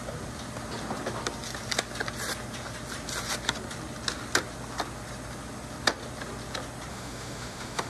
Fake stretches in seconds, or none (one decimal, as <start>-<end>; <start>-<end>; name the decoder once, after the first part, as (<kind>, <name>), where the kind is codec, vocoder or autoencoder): 6.9-7.9 (autoencoder, DAC-VAE)